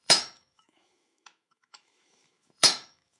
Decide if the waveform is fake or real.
fake